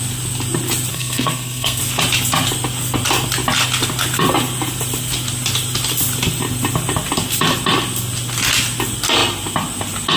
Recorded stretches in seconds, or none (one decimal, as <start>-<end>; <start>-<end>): 0.0-0.9; 1.8-10.2